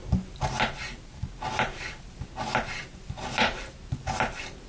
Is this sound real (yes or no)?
yes